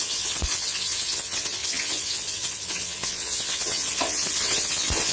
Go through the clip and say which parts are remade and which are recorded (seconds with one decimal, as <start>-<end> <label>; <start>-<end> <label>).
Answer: 0.0-5.1 remade